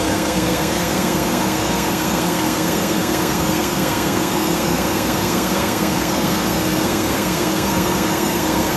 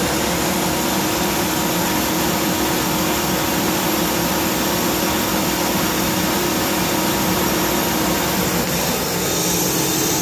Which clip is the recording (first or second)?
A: second